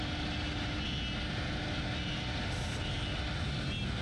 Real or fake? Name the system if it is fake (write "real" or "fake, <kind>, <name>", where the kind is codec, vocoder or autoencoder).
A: real